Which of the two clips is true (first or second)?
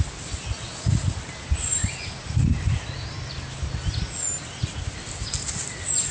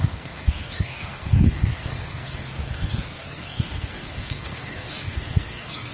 first